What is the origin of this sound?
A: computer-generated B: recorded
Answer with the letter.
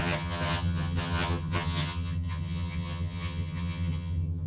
A